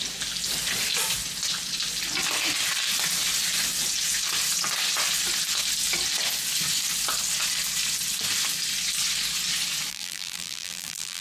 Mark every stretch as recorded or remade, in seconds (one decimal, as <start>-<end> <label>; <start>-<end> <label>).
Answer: 0.0-9.9 recorded; 9.9-11.2 remade